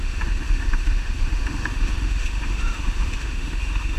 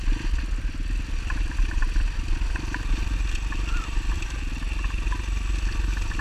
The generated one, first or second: first